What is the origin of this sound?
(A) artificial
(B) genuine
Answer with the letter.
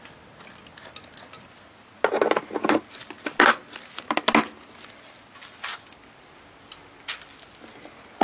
B